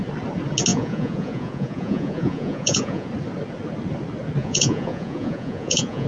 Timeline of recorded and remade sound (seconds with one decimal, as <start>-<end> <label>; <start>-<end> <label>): 0.0-0.7 recorded; 0.7-3.1 remade; 3.1-4.4 recorded; 4.4-6.1 remade

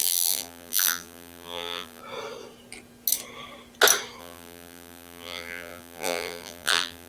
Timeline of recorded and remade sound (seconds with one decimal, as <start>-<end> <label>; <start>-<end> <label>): 0.0-2.0 remade; 2.0-4.2 recorded; 4.2-7.1 remade

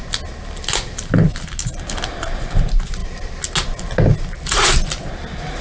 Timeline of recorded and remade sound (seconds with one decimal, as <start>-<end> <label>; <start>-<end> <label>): 0.0-5.6 recorded

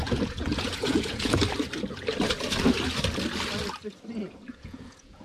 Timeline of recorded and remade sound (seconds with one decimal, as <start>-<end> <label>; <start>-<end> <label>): 0.0-1.4 remade; 1.4-4.5 recorded; 4.5-5.2 remade